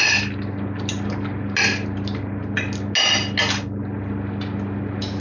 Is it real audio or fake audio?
real